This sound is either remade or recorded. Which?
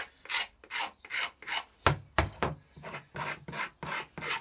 recorded